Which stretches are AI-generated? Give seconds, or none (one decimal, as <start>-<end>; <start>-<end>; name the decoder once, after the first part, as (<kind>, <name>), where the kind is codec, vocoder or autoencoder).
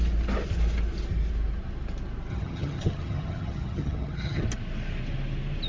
2.3-4.4 (vocoder, HiFi-GAN)